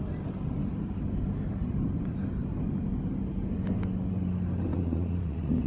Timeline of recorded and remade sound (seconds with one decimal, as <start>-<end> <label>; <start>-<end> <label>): 0.0-4.7 recorded; 4.7-5.7 remade